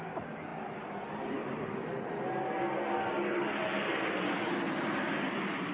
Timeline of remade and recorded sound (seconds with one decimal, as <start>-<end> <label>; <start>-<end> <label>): 0.0-5.7 recorded